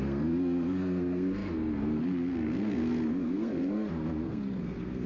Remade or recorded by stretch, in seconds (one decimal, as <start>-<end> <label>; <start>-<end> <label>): 0.0-5.1 remade